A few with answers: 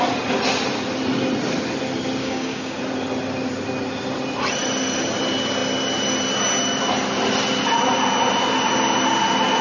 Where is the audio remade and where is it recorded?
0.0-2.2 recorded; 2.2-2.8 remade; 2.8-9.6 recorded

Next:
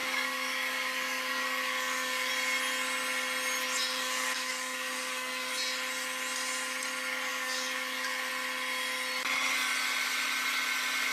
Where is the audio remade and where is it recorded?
0.0-2.3 remade; 2.3-3.8 recorded; 3.8-5.5 remade; 5.5-7.3 recorded; 7.3-8.3 remade; 8.3-11.1 recorded

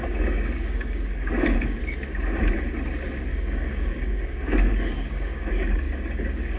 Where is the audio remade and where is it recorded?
0.0-1.8 remade; 1.8-3.3 recorded; 3.3-6.6 remade

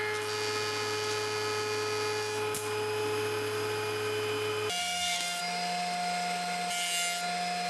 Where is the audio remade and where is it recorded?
0.0-4.8 recorded; 4.8-5.4 remade; 5.4-7.7 recorded

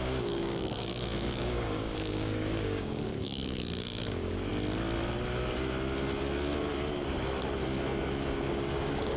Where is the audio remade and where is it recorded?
0.0-4.5 remade; 4.5-8.5 recorded; 8.5-9.2 remade